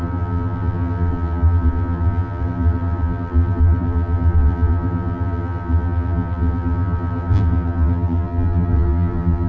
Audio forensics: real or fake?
fake